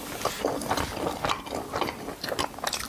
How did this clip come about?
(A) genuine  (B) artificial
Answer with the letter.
A